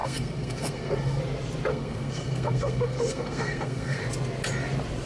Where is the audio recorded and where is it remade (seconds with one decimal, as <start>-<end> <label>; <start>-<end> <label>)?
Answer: 0.0-1.2 remade; 1.2-1.7 recorded; 1.7-4.0 remade; 4.0-5.1 recorded